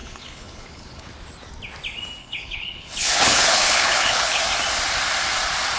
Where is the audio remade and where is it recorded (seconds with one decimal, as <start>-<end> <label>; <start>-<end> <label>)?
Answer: 0.0-1.1 remade; 1.1-2.2 recorded; 2.2-4.4 remade; 4.4-5.8 recorded